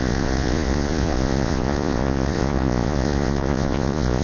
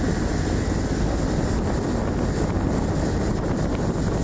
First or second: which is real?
second